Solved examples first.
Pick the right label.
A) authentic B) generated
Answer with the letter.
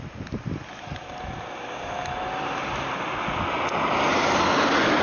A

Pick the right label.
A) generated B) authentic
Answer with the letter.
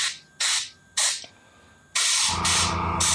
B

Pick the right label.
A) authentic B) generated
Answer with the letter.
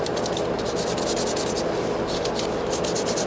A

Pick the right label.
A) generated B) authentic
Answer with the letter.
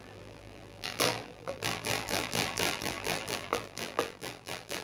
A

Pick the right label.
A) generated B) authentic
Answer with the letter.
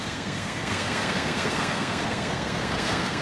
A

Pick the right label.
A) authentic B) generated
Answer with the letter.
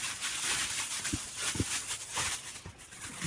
A